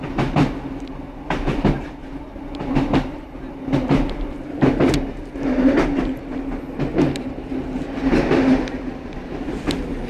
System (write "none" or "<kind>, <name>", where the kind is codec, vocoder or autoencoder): none